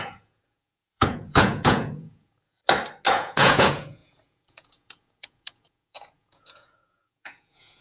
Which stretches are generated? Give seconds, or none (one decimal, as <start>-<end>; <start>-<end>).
0.0-2.6; 3.1-7.8